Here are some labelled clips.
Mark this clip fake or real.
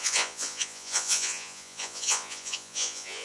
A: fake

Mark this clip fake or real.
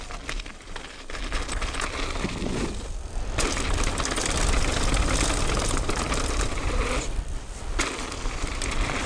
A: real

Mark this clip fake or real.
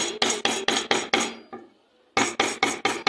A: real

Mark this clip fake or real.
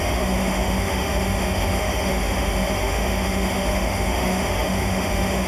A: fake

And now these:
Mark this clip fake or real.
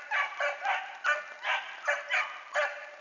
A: real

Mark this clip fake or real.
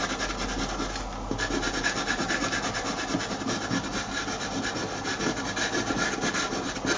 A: real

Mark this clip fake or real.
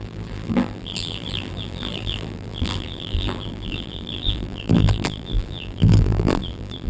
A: fake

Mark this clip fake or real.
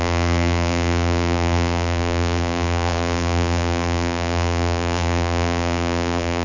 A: fake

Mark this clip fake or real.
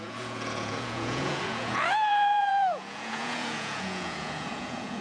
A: fake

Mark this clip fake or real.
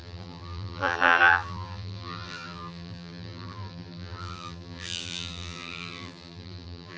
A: fake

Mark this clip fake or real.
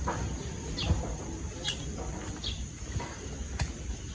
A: real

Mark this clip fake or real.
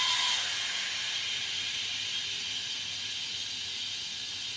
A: real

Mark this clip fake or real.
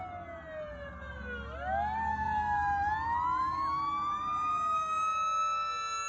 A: real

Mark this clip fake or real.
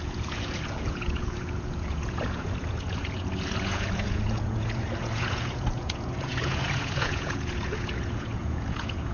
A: fake